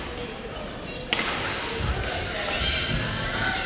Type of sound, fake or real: real